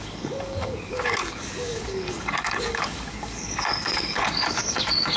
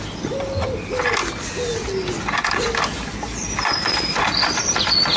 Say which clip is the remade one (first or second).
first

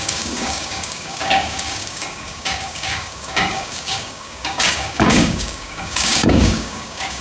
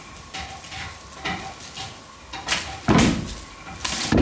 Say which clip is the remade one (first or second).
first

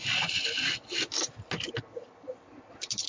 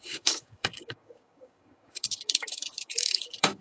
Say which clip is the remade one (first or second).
second